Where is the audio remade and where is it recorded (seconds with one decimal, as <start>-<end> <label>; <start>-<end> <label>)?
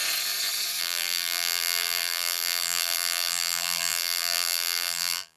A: 0.0-0.8 recorded; 0.8-5.4 remade